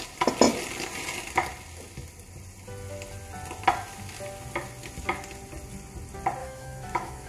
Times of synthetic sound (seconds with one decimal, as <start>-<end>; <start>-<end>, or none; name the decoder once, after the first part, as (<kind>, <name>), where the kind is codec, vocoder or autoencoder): 6.4-7.3 (autoencoder, DAC-VAE)